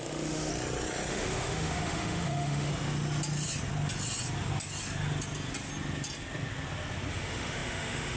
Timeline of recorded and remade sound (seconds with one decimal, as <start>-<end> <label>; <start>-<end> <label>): 0.0-0.5 remade; 0.5-1.1 recorded; 1.1-2.7 remade; 2.7-7.1 recorded; 7.1-8.2 remade